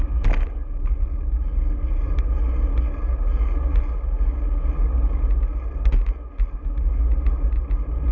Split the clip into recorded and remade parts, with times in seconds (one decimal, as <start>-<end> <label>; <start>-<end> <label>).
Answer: 0.0-8.1 recorded